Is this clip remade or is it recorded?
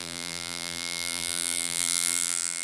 remade